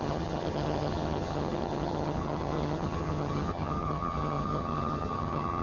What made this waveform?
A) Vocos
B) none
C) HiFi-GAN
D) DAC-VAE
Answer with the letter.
C